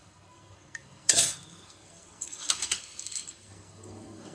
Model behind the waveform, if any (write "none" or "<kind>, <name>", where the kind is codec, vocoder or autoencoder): codec, SNAC